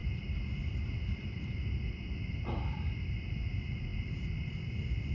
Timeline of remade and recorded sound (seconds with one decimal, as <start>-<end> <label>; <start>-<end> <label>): 0.0-5.1 recorded